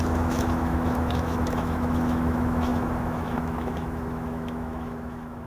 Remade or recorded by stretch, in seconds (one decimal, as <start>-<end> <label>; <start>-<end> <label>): 0.0-5.5 remade